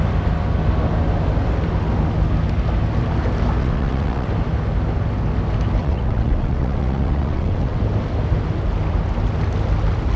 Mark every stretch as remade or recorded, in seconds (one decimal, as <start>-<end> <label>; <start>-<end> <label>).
0.0-3.6 recorded; 3.6-4.3 remade; 4.3-5.8 recorded; 5.8-7.8 remade; 7.8-10.2 recorded